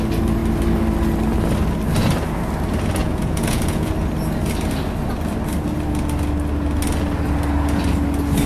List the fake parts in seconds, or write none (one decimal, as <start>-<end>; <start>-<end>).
3.0-3.9